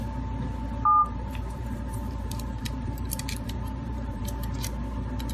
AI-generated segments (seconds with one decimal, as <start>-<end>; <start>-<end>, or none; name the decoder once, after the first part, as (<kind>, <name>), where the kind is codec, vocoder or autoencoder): 1.0-4.2 (vocoder, BigVGAN v2)